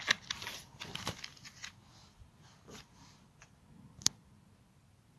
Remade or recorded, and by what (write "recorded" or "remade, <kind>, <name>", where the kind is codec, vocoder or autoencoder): recorded